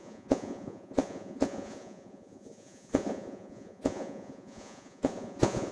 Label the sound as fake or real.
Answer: fake